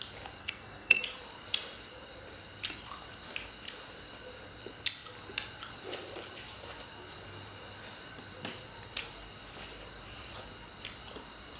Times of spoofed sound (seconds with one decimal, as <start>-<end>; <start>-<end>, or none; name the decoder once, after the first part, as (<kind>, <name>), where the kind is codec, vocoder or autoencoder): 0.4-1.0 (codec, SNAC)